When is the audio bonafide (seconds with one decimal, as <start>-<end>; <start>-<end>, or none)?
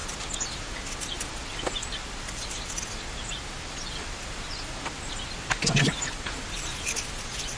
0.0-7.6